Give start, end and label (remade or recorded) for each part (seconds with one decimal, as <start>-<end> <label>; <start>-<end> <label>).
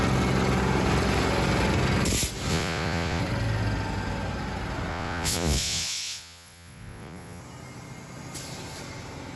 0.0-2.5 recorded; 2.5-3.2 remade; 3.2-4.9 recorded; 4.9-7.4 remade; 7.4-9.4 recorded